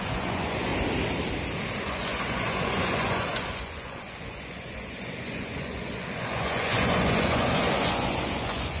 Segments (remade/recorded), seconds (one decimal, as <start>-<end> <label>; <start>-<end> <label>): 0.0-0.7 remade; 0.7-1.8 recorded; 1.8-8.8 remade